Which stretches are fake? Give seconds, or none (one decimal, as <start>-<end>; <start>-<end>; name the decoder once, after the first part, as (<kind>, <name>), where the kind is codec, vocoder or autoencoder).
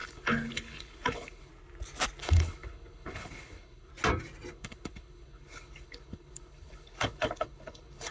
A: 0.0-1.5 (codec, HILCodec); 2.2-3.9; 4.5-8.1